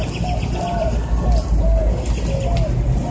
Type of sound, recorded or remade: recorded